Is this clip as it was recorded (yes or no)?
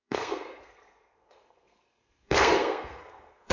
no